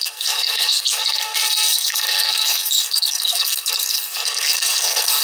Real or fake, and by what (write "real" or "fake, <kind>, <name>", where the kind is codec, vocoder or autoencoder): fake, codec, SNAC